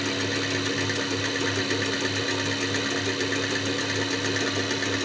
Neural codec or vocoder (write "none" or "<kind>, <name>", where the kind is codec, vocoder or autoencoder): none